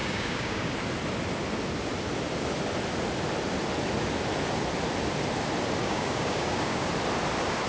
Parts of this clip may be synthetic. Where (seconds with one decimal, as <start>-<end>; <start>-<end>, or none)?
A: 0.0-0.7; 5.8-6.9